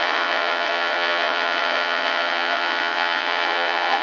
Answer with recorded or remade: remade